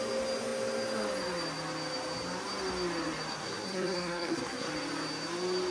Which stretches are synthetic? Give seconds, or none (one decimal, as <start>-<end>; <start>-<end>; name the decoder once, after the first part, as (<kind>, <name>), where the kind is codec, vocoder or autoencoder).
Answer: 3.3-4.7 (codec, SNAC)